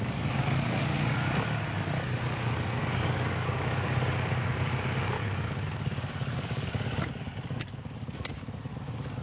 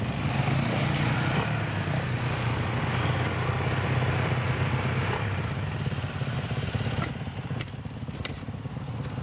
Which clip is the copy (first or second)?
first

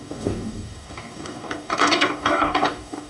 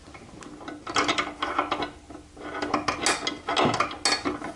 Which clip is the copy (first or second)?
first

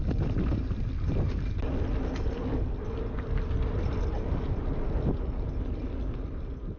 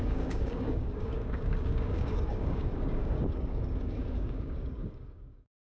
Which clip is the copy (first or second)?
second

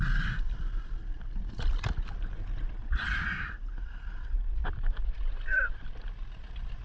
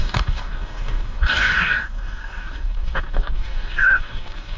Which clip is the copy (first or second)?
second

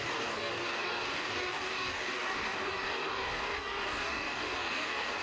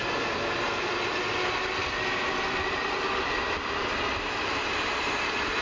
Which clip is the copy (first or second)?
first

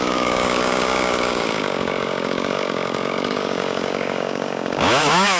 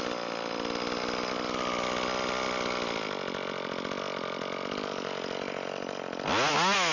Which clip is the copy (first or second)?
first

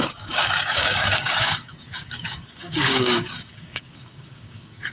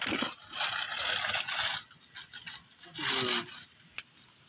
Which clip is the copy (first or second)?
first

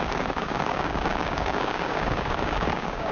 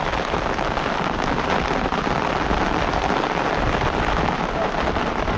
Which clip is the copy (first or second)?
first